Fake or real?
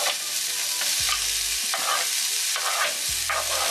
real